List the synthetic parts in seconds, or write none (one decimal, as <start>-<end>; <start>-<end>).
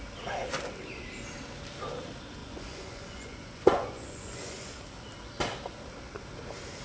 2.4-4.8